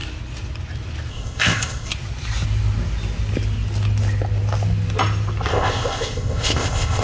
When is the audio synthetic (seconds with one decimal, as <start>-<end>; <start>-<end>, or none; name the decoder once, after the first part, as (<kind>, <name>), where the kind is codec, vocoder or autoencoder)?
1.1-1.9 (codec, ZipCodec); 5.5-7.0